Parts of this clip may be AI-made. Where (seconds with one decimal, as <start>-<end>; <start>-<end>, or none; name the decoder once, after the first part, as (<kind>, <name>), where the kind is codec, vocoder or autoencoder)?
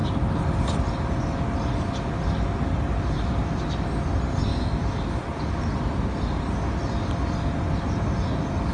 none